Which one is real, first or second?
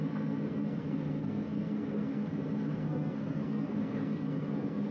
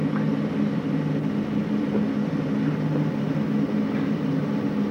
second